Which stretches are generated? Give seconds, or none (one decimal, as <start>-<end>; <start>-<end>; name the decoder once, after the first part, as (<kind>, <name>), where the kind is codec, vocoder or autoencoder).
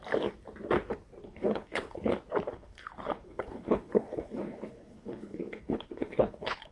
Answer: 1.2-2.1 (codec, HILCodec); 2.5-6.7